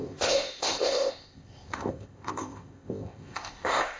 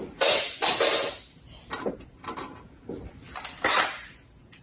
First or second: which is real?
second